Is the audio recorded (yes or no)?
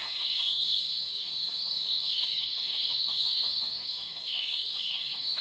no